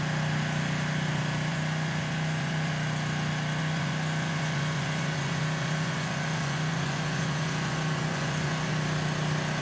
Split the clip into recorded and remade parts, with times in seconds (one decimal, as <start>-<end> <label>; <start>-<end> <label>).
0.0-1.5 recorded; 1.5-2.7 remade; 2.7-3.6 recorded; 3.6-8.7 remade; 8.7-9.6 recorded